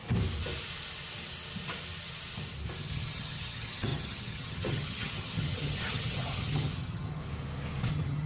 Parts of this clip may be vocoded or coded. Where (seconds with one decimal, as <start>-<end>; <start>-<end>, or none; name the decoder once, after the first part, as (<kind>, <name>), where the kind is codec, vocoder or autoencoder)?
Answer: 2.9-7.2 (vocoder, HiFi-GAN); 7.9-8.3